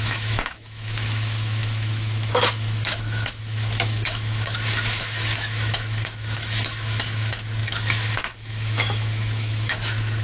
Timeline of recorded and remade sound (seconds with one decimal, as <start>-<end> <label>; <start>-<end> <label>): 0.0-10.2 remade